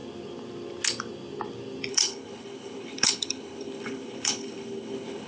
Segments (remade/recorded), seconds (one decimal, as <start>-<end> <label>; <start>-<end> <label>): 0.0-1.9 recorded; 1.9-5.3 remade